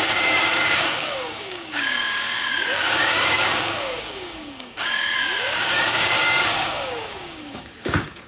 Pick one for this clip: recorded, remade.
remade